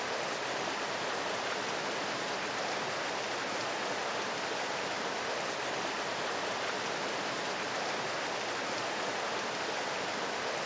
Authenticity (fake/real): real